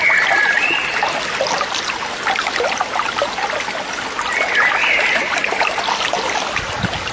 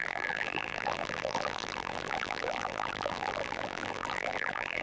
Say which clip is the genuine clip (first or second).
first